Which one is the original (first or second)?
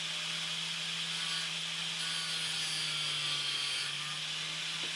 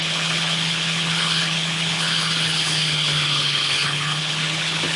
first